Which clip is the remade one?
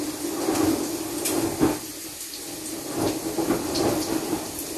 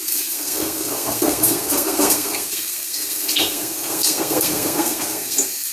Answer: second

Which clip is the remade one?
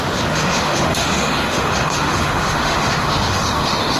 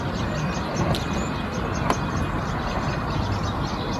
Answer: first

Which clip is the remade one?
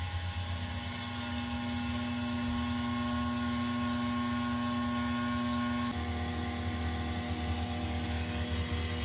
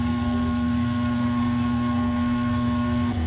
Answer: second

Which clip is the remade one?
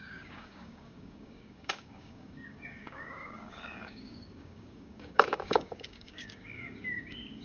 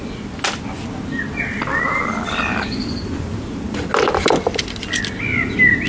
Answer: first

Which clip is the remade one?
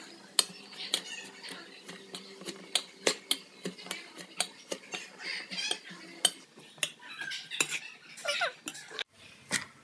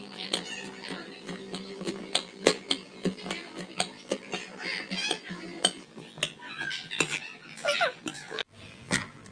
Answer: second